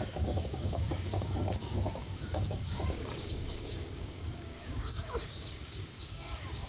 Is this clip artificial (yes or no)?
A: yes